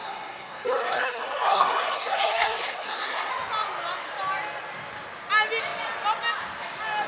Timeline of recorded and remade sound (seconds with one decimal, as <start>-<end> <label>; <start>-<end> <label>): 0.0-3.3 remade; 3.3-7.1 recorded